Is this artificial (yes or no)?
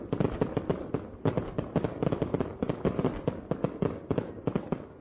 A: no